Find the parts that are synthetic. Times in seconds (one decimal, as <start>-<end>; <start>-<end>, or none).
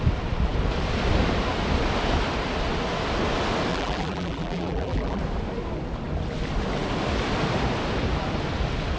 3.7-5.2